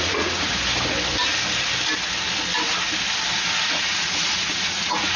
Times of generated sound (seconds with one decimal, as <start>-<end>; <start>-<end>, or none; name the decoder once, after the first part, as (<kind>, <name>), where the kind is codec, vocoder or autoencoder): 0.0-0.5 (vocoder, Vocos); 3.6-5.2